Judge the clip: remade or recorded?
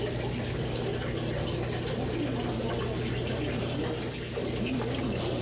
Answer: recorded